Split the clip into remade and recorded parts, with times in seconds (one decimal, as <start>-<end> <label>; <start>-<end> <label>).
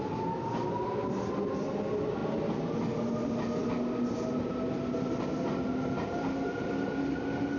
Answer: 0.0-7.6 recorded